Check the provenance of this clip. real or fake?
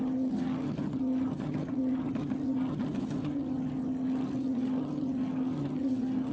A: fake